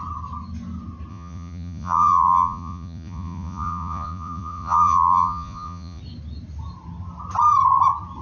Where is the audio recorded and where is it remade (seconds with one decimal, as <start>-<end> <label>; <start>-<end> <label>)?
0.0-1.1 recorded; 1.1-6.0 remade; 6.0-8.2 recorded